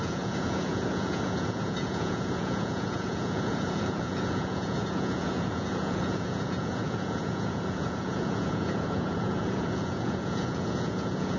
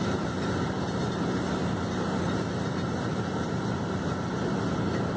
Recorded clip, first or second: second